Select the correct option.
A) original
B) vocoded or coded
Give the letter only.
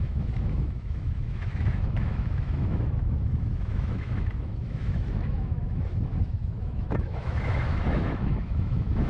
B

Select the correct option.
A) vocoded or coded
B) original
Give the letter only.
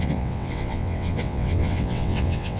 A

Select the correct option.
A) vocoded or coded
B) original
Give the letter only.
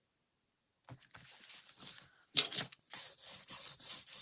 B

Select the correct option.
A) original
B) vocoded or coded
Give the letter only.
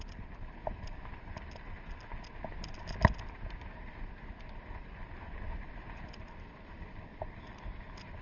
A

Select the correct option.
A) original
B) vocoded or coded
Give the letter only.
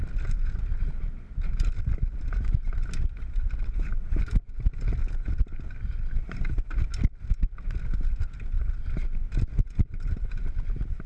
A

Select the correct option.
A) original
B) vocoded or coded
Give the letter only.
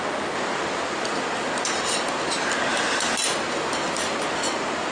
A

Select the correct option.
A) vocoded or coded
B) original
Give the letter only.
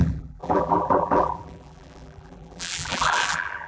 A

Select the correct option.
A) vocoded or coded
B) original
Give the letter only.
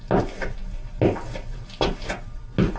B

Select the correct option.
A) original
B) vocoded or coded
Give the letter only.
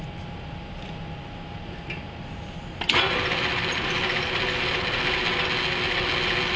A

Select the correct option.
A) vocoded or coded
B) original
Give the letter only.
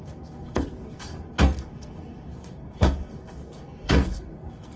A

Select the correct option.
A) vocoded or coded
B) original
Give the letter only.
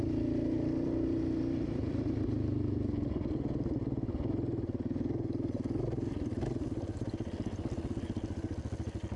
B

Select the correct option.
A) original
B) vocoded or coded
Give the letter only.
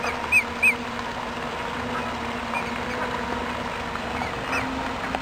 A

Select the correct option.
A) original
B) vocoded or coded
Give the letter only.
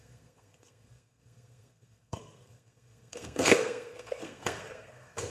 B